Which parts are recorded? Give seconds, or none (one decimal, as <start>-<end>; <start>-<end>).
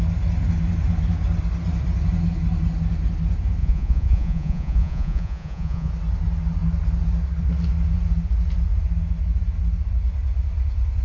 0.0-3.6; 5.9-11.0